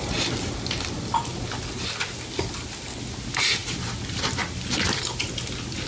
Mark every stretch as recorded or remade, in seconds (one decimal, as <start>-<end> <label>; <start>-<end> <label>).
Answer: 0.0-5.9 recorded